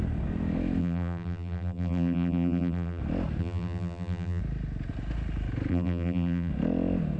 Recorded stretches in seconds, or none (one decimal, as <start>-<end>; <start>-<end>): 0.0-0.8; 3.0-3.4; 4.4-5.7; 6.5-7.2